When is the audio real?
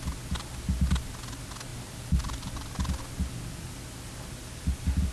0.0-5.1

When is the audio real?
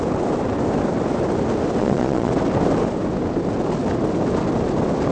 0.0-1.8; 2.3-5.1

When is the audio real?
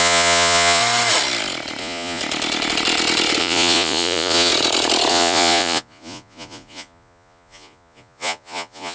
0.8-1.8; 2.2-3.4; 4.5-5.1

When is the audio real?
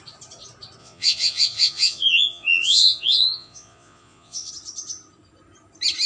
0.0-0.8; 4.5-6.1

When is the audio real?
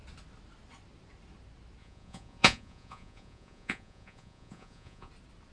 0.0-1.8; 5.1-5.5